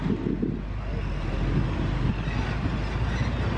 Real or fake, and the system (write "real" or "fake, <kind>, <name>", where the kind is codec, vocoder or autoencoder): real